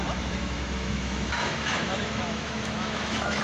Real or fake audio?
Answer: fake